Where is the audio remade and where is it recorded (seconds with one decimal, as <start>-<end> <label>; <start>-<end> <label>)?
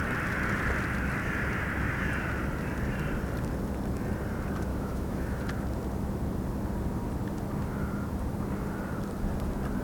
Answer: 0.0-4.7 recorded; 4.7-5.4 remade; 5.4-9.8 recorded